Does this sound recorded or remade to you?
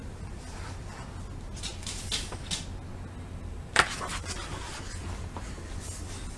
recorded